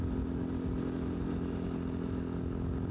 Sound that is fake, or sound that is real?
real